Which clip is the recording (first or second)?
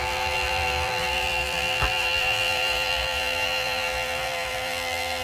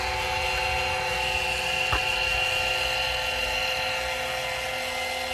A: second